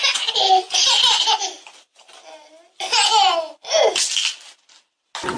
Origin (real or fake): real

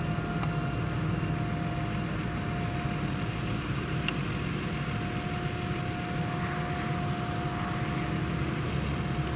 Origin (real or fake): real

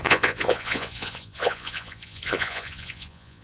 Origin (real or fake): fake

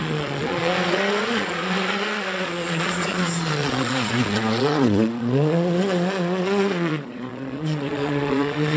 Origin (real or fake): fake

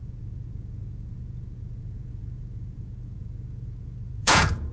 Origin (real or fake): fake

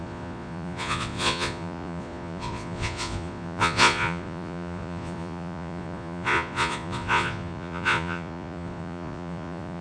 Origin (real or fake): fake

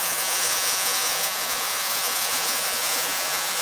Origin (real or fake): fake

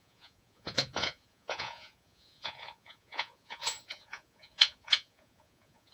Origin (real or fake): fake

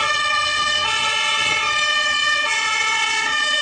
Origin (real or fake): fake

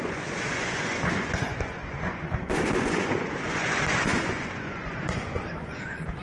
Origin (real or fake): fake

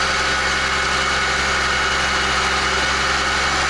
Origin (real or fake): real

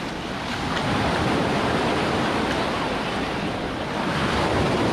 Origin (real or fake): real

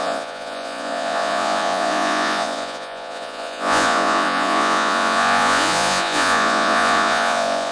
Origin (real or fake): fake